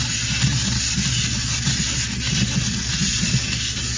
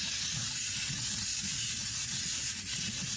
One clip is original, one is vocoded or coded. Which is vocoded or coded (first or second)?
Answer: second